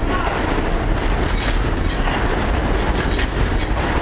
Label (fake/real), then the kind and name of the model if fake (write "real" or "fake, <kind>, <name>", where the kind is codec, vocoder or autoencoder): real